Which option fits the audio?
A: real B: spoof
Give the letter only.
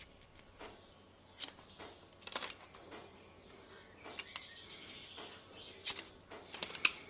A